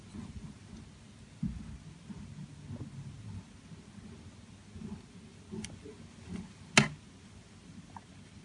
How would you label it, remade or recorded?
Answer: recorded